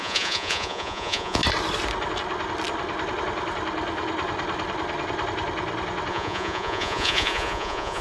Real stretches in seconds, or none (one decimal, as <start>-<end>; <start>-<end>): 1.4-6.1